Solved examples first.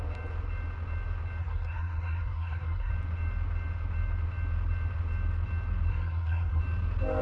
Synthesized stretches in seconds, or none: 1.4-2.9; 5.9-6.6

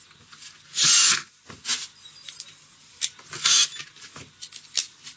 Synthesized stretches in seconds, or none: none